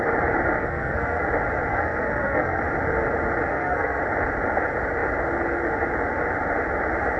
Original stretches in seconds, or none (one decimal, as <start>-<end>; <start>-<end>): 0.0-0.6; 1.2-1.7; 2.6-3.5; 4.0-7.2